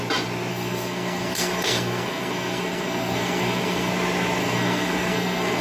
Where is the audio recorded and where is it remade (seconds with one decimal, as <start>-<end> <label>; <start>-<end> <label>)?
0.0-0.5 recorded; 0.5-3.9 remade; 3.9-4.4 recorded; 4.4-5.6 remade